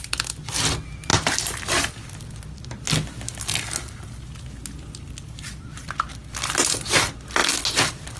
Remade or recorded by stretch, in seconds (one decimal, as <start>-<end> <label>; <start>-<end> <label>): 0.0-8.2 recorded